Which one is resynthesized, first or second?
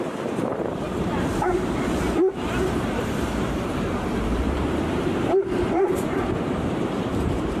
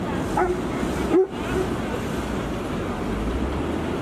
first